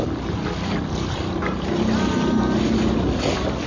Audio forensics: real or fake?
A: real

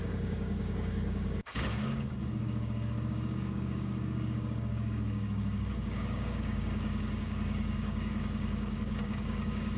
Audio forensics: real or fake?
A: fake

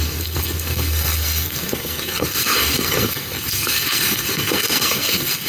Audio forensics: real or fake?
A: fake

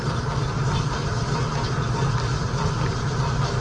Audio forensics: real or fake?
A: real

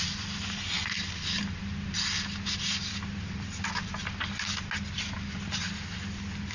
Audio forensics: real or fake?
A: real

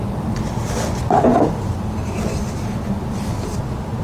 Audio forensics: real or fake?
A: real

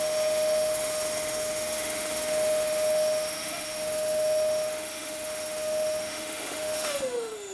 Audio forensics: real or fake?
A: fake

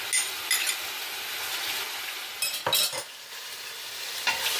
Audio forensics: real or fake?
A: real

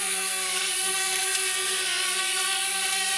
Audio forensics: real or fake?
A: fake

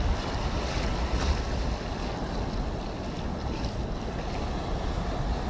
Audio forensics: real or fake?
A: real